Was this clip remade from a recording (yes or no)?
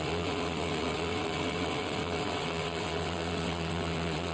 yes